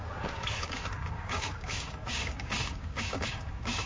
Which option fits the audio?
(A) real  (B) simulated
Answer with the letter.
B